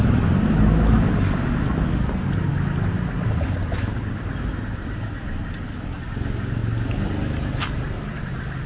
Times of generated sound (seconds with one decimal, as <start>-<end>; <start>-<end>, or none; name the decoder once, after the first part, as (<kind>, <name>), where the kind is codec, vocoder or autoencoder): none